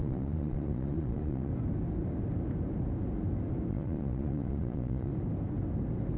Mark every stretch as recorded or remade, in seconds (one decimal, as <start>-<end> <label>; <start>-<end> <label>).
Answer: 0.0-1.5 remade; 1.5-3.7 recorded; 3.7-5.1 remade; 5.1-6.2 recorded